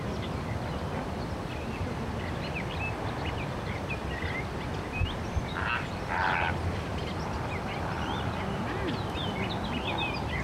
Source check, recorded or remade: recorded